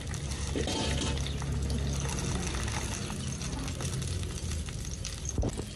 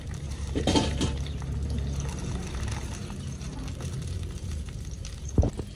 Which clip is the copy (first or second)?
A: second